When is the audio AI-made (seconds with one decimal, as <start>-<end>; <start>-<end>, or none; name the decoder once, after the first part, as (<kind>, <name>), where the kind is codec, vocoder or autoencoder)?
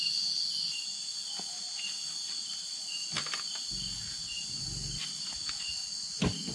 none